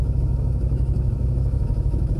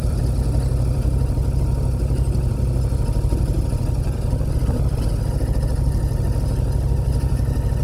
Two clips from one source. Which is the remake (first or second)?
first